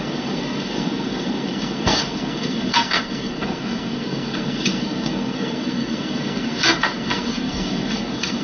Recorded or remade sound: remade